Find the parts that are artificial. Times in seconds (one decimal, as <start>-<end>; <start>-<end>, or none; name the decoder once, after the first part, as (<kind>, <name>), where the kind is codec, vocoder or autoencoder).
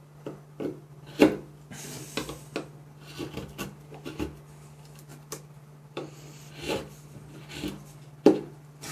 5.1-7.4 (vocoder, BigVGAN v2)